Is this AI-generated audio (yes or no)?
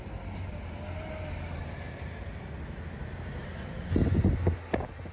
no